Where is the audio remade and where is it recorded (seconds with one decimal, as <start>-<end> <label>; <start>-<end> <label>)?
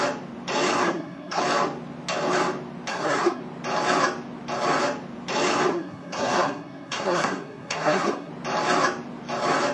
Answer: 0.0-0.8 recorded; 0.8-1.4 remade; 1.4-2.9 recorded; 2.9-3.4 remade; 3.4-5.7 recorded; 5.7-8.3 remade; 8.3-9.7 recorded